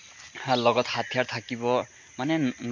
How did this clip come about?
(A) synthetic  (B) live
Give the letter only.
B